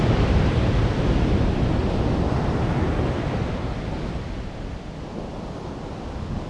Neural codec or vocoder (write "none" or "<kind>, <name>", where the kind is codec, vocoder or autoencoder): none